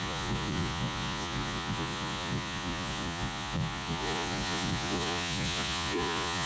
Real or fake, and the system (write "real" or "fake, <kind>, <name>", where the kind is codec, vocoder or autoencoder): fake, vocoder, Vocos